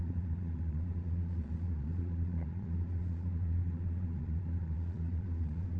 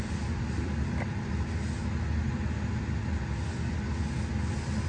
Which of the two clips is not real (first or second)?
first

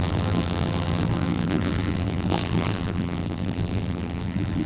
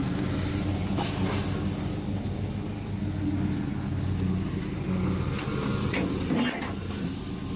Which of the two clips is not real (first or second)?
first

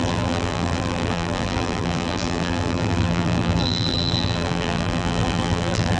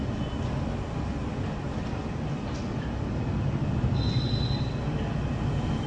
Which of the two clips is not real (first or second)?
first